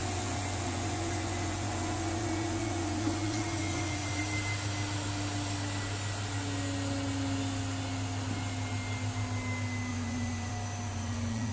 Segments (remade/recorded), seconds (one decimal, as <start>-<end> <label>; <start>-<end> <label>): 0.0-4.2 remade; 4.2-9.9 recorded; 9.9-10.5 remade; 10.5-10.9 recorded; 10.9-11.5 remade